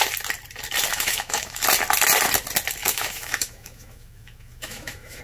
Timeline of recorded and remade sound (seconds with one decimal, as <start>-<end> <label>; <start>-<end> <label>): 0.0-0.9 recorded; 0.9-1.6 remade; 1.6-2.8 recorded; 2.8-5.2 remade